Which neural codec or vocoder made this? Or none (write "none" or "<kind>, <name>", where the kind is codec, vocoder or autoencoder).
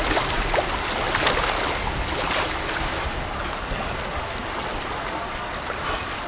none